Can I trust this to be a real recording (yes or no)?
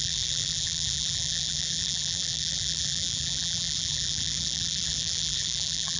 no